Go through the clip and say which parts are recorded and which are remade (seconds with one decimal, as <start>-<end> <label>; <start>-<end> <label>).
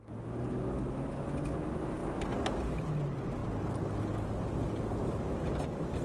0.0-6.0 recorded